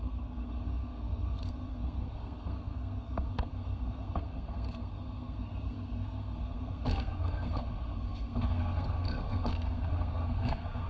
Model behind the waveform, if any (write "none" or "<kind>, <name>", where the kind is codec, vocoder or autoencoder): codec, SNAC